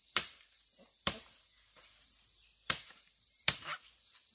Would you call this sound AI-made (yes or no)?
yes